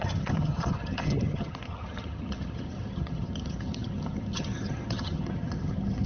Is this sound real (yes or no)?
no